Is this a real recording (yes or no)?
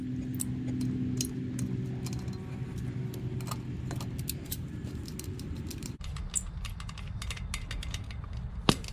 yes